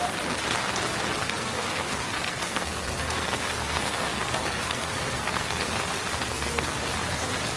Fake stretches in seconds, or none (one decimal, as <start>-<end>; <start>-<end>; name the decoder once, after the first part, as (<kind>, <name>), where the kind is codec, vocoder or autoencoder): 1.2-5.8 (codec, SNAC); 6.3-6.8